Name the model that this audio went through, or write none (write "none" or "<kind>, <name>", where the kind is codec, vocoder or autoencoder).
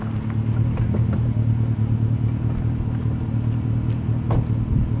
none